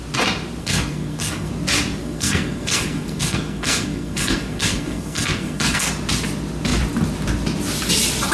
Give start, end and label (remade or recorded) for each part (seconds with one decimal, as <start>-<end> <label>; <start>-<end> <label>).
0.0-0.6 recorded; 0.6-1.5 remade; 1.5-2.0 recorded; 2.0-5.9 remade; 5.9-8.3 recorded